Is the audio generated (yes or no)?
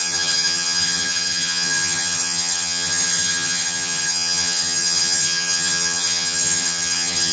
yes